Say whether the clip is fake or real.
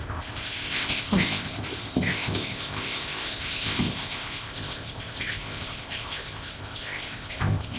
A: fake